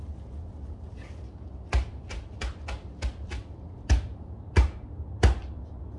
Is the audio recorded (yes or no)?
yes